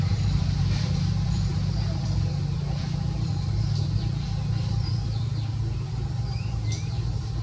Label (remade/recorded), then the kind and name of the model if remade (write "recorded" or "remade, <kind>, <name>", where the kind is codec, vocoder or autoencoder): remade, vocoder, BigVGAN v2